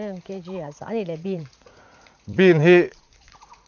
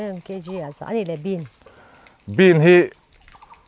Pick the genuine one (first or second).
second